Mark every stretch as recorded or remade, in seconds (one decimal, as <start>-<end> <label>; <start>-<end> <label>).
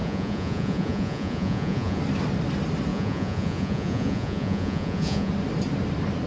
0.0-2.0 remade; 2.0-2.9 recorded; 2.9-5.3 remade; 5.3-6.3 recorded